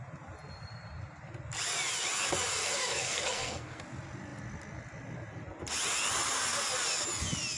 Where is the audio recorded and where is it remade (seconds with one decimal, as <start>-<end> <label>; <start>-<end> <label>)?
0.0-2.6 recorded; 2.6-3.8 remade; 3.8-7.6 recorded